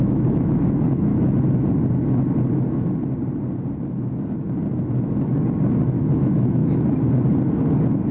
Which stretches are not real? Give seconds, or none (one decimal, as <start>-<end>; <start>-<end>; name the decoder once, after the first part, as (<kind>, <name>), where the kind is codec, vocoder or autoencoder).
0.0-1.1 (autoencoder, DAC-VAE); 6.0-6.6

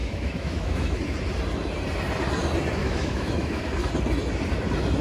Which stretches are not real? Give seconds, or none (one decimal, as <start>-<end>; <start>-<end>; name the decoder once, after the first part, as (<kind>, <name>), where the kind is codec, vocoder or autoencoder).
0.0-1.0 (autoencoder, DAC-VAE); 2.8-3.7

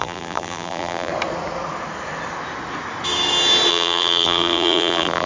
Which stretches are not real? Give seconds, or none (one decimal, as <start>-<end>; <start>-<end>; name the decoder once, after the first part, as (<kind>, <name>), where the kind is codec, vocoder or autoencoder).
0.0-1.1 (vocoder, BigVGAN v2); 3.7-5.3

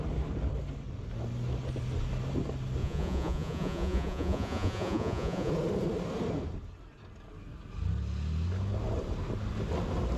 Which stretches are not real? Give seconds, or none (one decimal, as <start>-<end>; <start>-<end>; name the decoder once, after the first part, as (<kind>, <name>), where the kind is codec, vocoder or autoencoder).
2.8-5.5 (vocoder, Vocos)

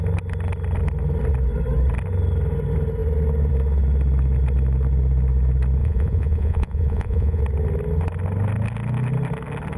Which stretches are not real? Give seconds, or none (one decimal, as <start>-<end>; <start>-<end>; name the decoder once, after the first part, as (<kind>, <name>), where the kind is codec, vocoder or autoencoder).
5.8-7.4 (vocoder, Vocos)

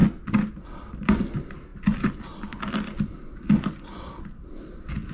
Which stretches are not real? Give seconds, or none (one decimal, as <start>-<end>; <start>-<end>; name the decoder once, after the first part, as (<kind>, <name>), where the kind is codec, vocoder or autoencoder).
none

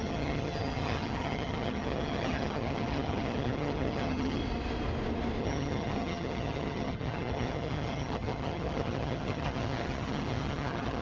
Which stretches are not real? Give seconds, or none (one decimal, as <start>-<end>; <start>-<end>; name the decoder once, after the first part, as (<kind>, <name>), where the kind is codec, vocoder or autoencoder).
0.0-4.4 (vocoder, HiFi-GAN); 5.4-11.0

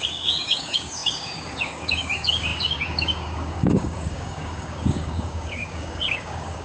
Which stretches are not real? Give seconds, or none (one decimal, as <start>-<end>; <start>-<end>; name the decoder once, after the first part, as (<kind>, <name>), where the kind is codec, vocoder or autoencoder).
0.0-6.6 (codec, DAC)